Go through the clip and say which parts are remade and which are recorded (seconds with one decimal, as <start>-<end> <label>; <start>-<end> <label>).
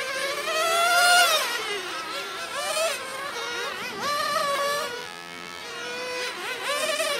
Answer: 0.0-5.0 recorded; 5.0-5.6 remade; 5.6-7.2 recorded